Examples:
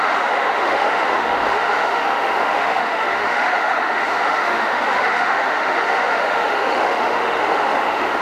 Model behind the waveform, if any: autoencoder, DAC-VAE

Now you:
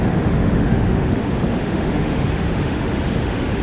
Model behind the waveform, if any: autoencoder, DAC-VAE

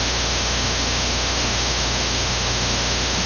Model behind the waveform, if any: autoencoder, DAC-VAE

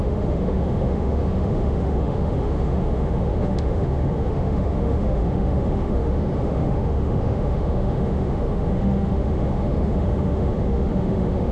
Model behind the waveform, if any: autoencoder, DAC-VAE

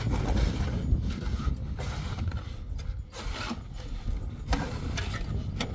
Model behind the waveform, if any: none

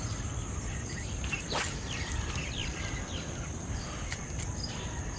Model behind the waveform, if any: none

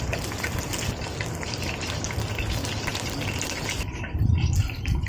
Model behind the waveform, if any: none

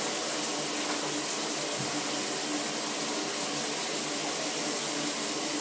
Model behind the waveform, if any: none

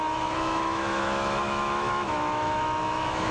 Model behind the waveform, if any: autoencoder, DAC-VAE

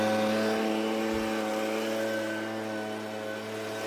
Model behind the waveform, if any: none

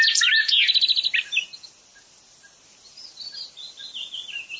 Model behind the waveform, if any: none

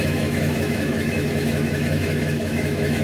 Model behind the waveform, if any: autoencoder, DAC-VAE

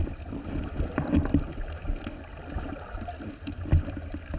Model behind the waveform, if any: none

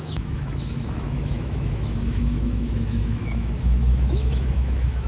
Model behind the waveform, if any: autoencoder, DAC-VAE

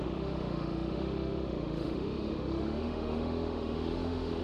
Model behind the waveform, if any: autoencoder, DAC-VAE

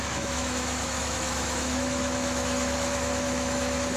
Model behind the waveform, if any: autoencoder, DAC-VAE